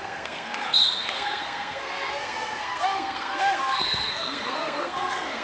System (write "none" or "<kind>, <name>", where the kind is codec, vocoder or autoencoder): codec, SNAC